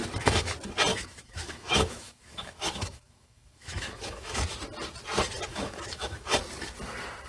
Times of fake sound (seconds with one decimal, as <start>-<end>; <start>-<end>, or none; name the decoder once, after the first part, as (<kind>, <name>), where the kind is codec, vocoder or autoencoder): 0.9-4.4 (autoencoder, DAC-VAE); 5.5-6.3